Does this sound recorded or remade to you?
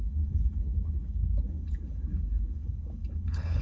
remade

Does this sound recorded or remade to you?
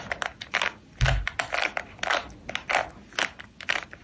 recorded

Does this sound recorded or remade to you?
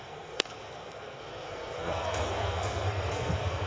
remade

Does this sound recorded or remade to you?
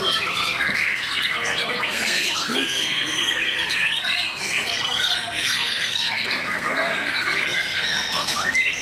remade